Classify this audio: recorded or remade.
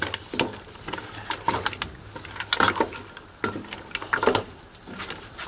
recorded